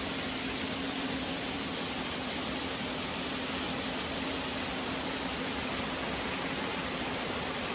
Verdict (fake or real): real